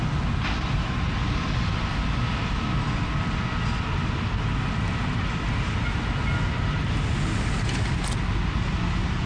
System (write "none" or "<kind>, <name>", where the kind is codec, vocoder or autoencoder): none